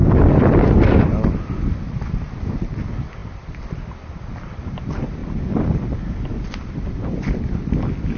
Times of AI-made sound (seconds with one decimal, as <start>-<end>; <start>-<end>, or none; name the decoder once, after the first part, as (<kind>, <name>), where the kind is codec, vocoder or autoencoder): 3.2-4.7 (vocoder, BigVGAN v2)